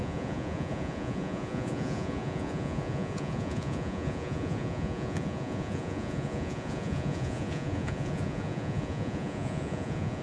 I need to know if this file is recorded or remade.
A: remade